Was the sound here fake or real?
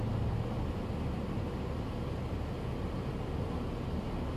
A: real